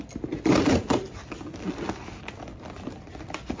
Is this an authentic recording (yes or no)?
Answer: yes